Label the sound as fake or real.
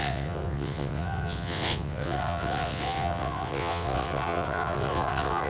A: fake